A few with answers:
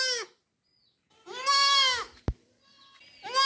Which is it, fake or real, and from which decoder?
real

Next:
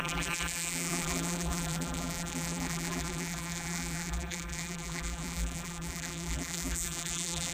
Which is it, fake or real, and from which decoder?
fake, vocoder, BigVGAN v2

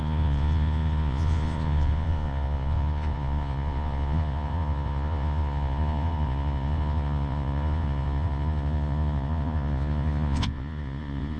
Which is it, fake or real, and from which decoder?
fake, vocoder, Vocos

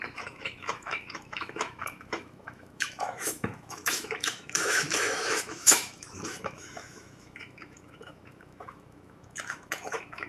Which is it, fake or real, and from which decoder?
fake, autoencoder, DAC-VAE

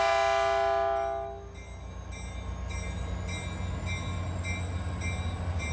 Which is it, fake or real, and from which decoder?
real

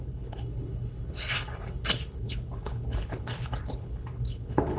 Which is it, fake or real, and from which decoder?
fake, codec, HILCodec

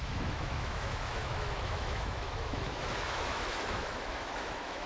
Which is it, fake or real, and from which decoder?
fake, autoencoder, DAC-VAE